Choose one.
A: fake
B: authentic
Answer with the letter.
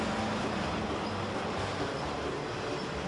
B